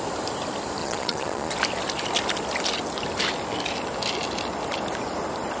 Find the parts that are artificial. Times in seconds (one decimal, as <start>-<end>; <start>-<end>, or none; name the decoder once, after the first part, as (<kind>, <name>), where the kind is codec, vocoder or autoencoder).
0.8-1.5 (vocoder, Vocos)